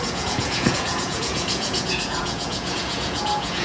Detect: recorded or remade remade